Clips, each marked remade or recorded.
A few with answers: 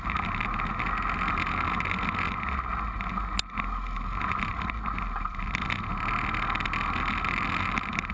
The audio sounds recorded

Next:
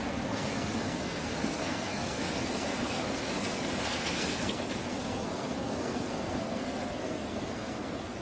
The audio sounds remade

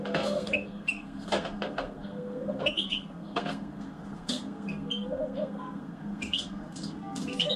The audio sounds remade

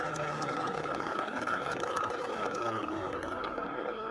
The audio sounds remade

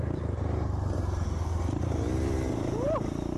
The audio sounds recorded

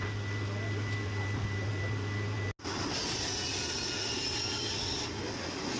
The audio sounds recorded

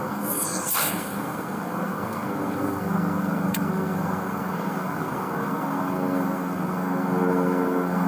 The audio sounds remade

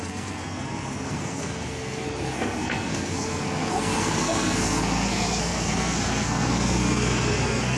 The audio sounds remade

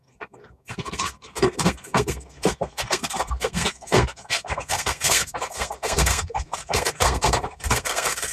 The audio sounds remade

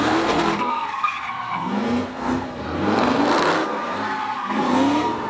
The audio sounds remade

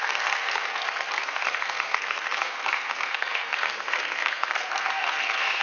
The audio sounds remade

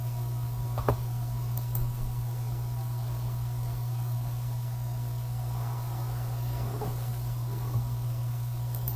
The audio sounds remade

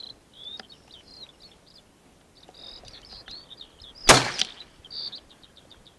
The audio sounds recorded